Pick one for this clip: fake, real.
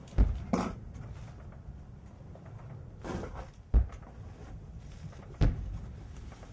real